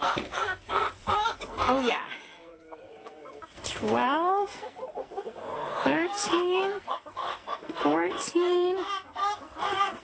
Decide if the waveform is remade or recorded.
remade